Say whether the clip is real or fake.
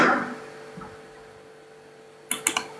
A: real